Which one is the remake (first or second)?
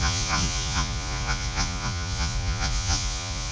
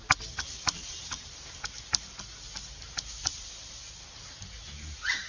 first